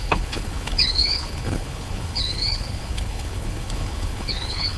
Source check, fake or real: fake